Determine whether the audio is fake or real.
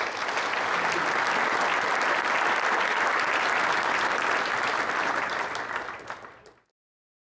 real